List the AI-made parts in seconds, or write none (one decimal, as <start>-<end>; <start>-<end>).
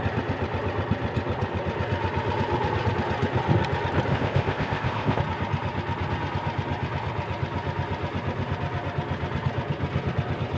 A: 4.1-5.2